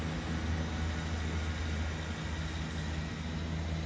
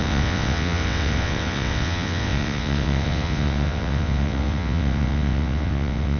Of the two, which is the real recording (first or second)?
first